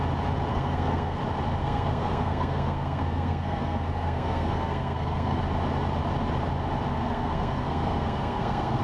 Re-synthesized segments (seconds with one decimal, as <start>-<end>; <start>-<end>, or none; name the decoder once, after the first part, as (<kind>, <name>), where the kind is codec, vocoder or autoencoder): 0.5-1.2 (codec, SNAC); 1.6-5.4; 6.9-8.8